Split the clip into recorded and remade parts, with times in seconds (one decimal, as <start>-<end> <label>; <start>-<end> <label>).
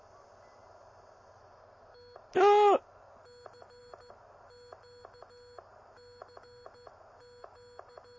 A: 0.0-8.2 recorded